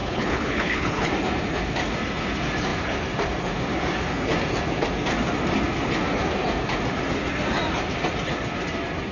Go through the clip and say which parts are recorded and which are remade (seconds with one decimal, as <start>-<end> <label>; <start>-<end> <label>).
0.0-1.1 remade; 1.1-9.1 recorded